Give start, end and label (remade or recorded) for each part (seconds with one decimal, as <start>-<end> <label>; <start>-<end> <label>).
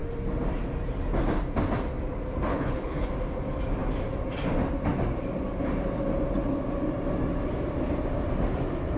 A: 0.0-2.5 recorded; 2.5-3.1 remade; 3.1-9.0 recorded